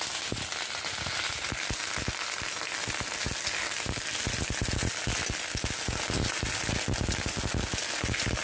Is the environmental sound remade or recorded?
recorded